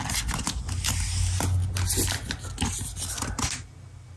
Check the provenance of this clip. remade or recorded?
recorded